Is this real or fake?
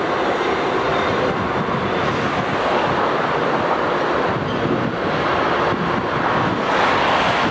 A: real